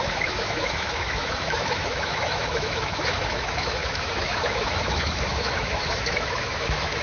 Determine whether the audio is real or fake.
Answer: fake